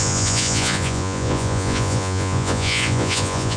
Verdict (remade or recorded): remade